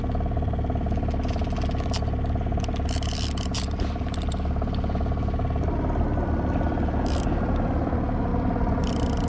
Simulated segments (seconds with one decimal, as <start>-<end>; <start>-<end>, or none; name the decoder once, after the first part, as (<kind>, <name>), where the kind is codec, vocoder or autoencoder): none